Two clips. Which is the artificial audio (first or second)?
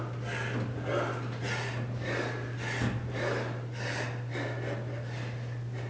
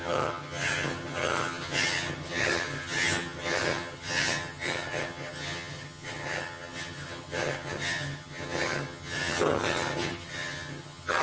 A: second